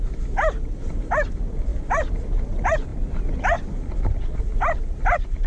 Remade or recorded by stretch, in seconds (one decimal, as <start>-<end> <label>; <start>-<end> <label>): 0.0-5.5 recorded